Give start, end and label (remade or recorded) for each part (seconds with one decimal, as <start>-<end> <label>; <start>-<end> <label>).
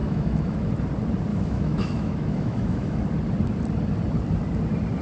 0.0-0.7 remade; 0.7-1.3 recorded; 1.3-3.0 remade; 3.0-5.0 recorded